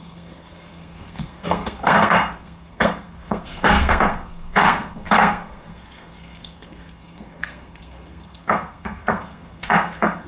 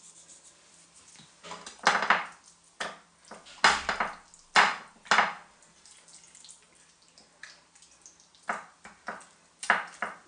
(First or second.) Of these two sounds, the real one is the second